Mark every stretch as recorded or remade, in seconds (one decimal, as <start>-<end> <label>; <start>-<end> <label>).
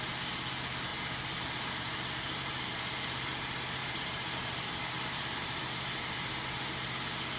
0.0-0.9 recorded; 0.9-3.3 remade; 3.3-3.8 recorded; 3.8-6.7 remade; 6.7-7.4 recorded